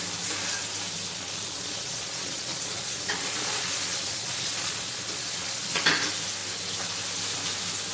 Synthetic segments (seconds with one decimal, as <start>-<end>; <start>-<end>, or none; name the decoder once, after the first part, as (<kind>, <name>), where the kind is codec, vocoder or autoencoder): 1.1-5.8 (vocoder, Vocos)